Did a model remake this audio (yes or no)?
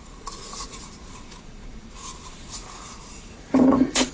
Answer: yes